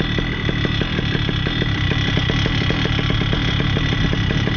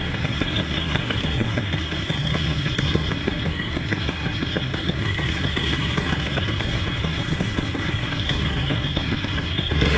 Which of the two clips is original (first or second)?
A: first